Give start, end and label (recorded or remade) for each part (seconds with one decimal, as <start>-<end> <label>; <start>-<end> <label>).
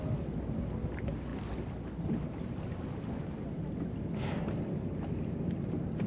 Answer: 0.0-6.1 recorded